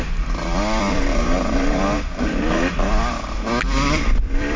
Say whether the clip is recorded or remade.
remade